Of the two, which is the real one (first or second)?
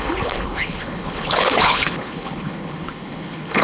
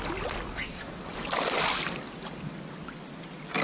second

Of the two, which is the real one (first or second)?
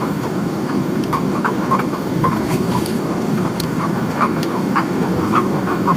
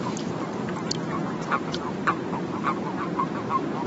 second